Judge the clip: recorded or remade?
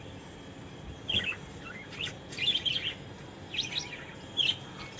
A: recorded